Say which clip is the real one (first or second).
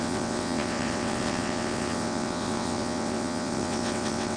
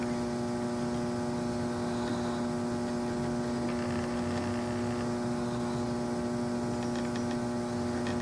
second